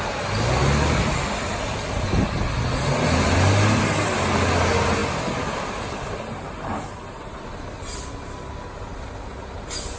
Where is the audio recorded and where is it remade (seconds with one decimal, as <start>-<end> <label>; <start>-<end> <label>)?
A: 0.0-10.0 recorded